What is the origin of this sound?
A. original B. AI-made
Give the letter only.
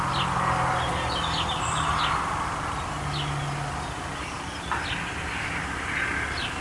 A